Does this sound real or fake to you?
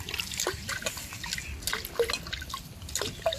real